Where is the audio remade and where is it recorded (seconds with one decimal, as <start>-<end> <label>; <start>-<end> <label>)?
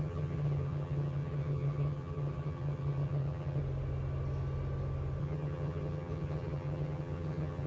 0.0-3.6 remade; 3.6-5.2 recorded; 5.2-7.7 remade